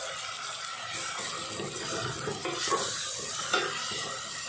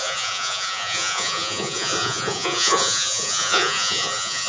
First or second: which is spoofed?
second